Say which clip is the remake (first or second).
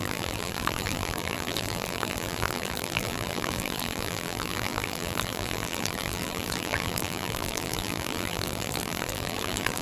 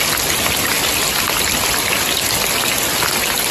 first